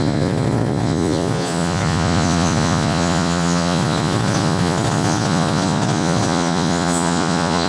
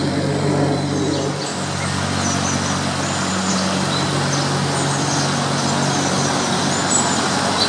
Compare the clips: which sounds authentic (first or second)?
second